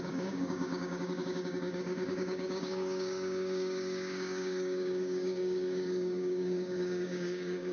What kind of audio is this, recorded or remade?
remade